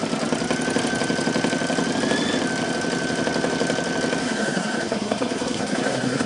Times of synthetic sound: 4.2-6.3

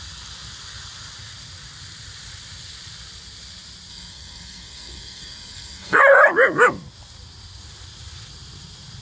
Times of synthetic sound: 3.9-6.0

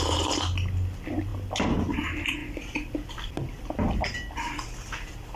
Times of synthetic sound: none

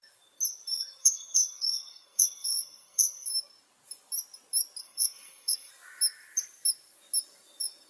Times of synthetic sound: 1.0-3.3; 4.8-5.7